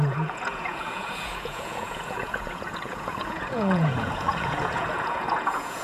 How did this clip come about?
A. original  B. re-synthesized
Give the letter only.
B